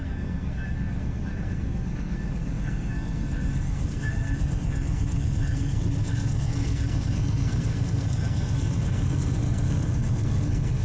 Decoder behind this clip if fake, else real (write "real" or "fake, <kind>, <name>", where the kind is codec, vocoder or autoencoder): fake, codec, SNAC